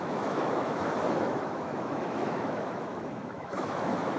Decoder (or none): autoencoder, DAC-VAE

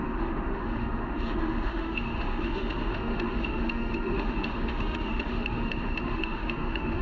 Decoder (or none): autoencoder, DAC-VAE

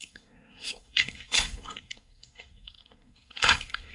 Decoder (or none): codec, SNAC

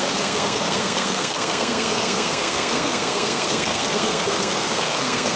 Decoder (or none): codec, SNAC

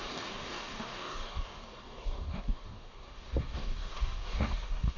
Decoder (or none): codec, DAC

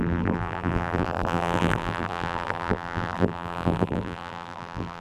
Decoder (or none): vocoder, BigVGAN v2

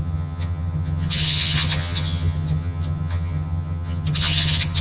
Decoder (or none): vocoder, HiFi-GAN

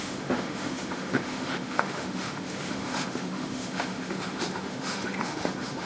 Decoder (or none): autoencoder, DAC-VAE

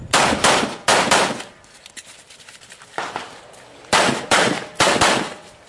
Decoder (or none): none